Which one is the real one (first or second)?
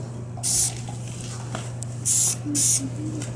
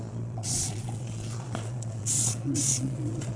first